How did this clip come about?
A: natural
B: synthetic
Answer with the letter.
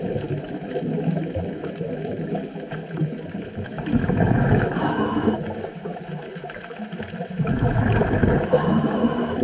B